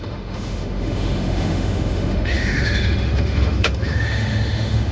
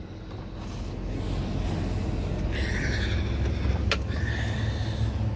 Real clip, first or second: second